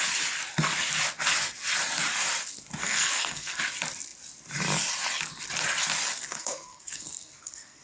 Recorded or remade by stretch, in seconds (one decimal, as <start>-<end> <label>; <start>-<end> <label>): 0.0-2.8 recorded; 2.8-3.6 remade; 3.6-6.2 recorded; 6.2-7.8 remade